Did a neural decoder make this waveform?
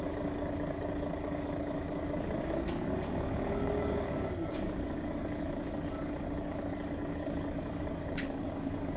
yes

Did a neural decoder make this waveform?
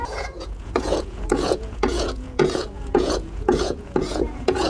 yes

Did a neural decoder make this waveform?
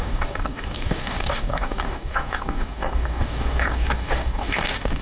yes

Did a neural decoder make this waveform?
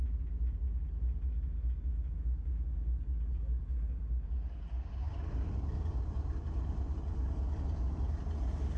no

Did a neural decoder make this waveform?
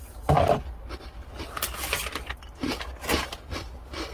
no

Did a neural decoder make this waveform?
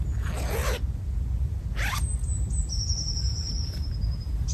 no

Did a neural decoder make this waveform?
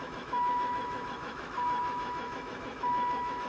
yes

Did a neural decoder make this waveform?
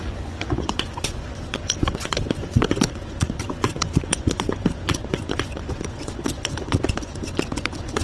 yes